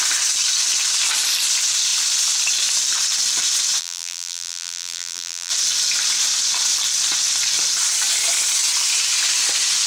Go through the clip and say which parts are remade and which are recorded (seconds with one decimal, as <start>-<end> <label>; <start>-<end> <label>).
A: 0.0-3.8 recorded; 3.8-5.5 remade; 5.5-9.9 recorded